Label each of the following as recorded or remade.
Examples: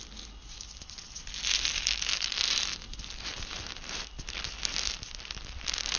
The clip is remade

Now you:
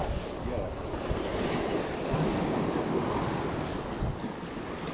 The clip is recorded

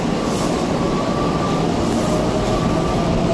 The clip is recorded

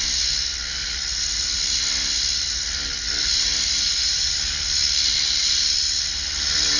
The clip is recorded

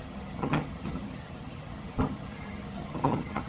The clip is remade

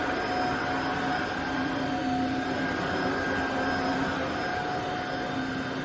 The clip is recorded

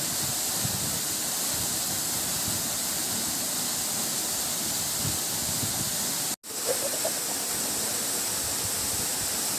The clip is recorded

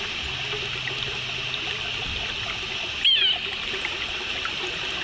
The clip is recorded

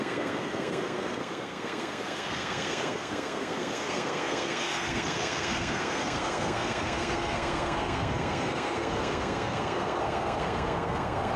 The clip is remade